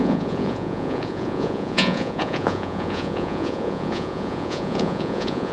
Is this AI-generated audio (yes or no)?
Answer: yes